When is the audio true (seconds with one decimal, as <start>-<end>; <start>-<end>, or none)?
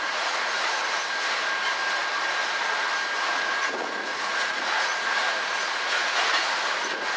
0.8-3.2